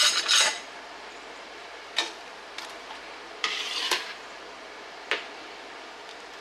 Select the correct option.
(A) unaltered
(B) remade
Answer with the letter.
B